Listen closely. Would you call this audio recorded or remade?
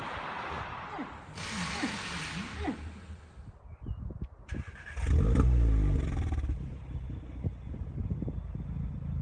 recorded